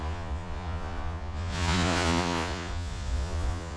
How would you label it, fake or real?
fake